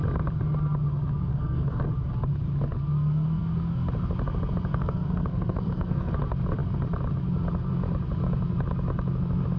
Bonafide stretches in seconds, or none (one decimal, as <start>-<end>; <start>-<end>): 0.0-1.3; 1.8-4.7; 6.1-9.6